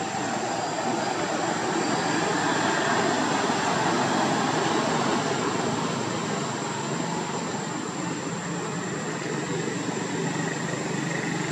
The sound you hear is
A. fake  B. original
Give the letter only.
B